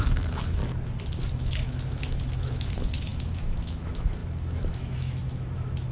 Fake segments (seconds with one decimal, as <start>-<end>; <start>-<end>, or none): 0.0-0.6; 1.3-5.9